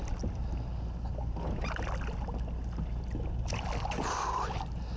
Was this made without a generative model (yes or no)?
yes